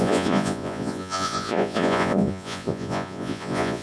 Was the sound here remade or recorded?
remade